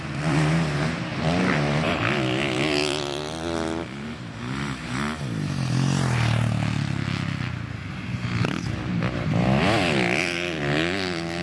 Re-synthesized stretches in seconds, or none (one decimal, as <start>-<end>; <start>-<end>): none